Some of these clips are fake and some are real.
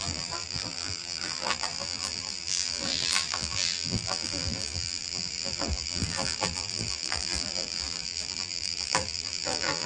fake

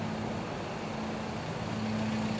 real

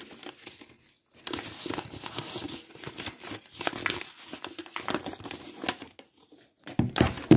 real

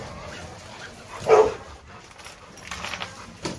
real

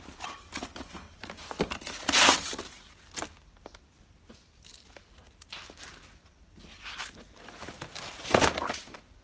fake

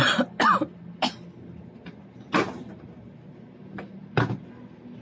real